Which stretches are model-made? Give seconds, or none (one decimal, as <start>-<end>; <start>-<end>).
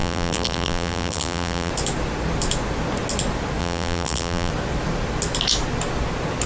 0.0-1.7; 3.6-4.5